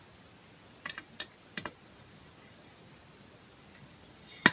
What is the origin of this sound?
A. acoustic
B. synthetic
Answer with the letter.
A